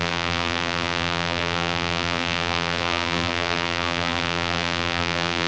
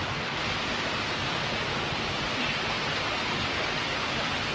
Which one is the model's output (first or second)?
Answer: first